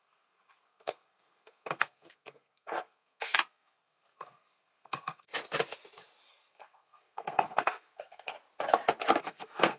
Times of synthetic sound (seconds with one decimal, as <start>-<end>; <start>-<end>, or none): 0.0-5.3; 6.3-8.3; 9.2-9.8